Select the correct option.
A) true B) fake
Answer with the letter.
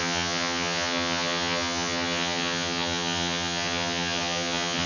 B